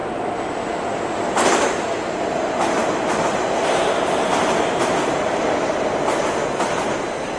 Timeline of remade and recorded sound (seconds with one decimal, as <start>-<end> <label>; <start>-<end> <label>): 0.0-7.4 recorded